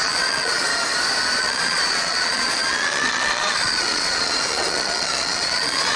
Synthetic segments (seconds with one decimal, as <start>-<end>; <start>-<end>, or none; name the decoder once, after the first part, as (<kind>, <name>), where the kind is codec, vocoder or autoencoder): 0.0-0.7 (vocoder, Vocos); 1.4-6.0